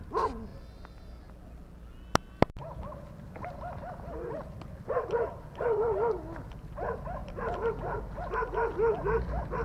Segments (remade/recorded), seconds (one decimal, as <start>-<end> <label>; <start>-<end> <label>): 0.0-9.6 recorded